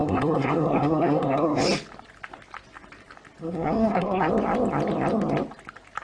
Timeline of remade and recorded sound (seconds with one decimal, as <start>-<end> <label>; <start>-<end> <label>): 0.0-1.6 remade; 1.6-3.4 recorded; 3.4-4.3 remade; 4.3-6.0 recorded